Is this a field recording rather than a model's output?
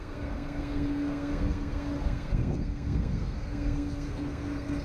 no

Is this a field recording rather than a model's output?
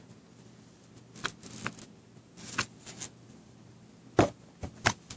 yes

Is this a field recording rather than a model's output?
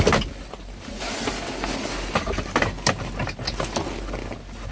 yes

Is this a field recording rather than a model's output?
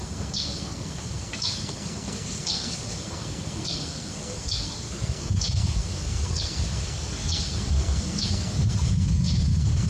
no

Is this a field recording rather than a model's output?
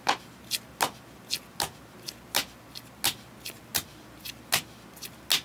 yes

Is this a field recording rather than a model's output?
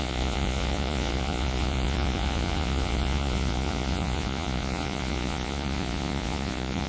no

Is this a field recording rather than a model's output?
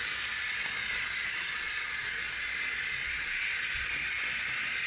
yes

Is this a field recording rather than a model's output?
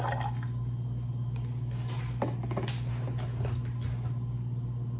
yes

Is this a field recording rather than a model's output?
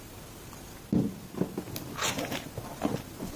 yes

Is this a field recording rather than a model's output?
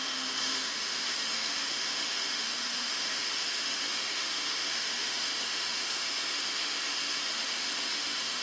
no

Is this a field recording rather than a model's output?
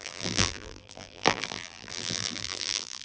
no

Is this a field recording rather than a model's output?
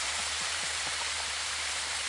no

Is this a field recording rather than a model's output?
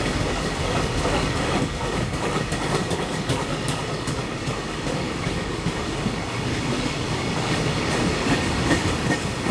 no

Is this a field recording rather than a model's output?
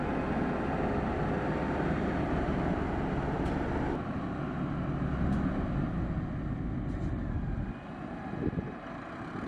yes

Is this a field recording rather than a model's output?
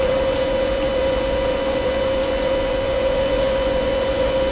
no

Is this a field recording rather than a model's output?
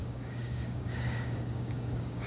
no